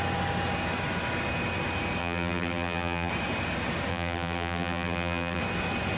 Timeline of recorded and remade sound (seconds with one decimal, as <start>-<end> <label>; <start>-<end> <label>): 0.0-2.0 recorded; 2.0-3.1 remade; 3.1-3.9 recorded; 3.9-5.4 remade; 5.4-6.0 recorded